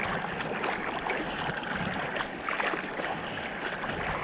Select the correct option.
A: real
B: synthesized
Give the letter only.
A